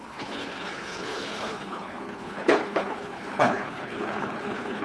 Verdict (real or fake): fake